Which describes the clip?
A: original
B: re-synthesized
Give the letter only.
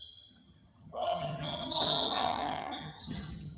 B